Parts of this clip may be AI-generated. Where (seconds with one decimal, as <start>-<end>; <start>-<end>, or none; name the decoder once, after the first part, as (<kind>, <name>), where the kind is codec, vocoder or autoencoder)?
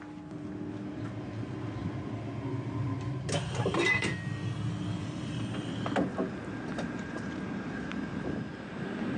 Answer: 1.8-2.5 (vocoder, BigVGAN v2)